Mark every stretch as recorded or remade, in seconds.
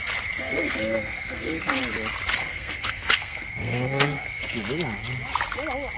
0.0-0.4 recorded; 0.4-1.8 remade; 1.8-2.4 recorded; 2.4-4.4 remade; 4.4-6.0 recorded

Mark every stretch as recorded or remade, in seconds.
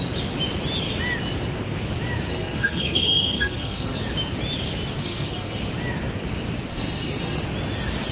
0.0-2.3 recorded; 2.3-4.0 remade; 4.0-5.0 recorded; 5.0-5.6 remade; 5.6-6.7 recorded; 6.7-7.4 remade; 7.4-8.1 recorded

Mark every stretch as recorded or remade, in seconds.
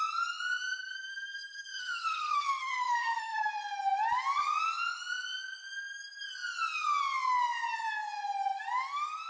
0.0-0.8 recorded; 0.8-3.5 remade; 3.5-9.3 recorded